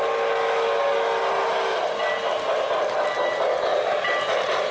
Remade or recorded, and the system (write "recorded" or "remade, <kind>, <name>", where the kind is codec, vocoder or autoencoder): recorded